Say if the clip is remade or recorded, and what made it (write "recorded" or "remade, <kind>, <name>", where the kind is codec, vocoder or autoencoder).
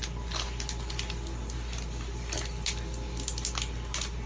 recorded